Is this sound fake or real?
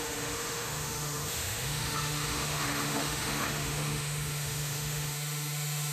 fake